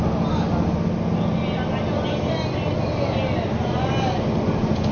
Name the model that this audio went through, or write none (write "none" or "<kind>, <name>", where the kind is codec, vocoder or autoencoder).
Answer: none